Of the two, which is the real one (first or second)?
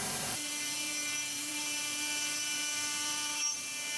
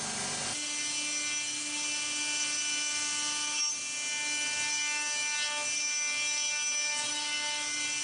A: second